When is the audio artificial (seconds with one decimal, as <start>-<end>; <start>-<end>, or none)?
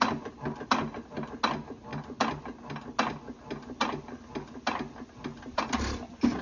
none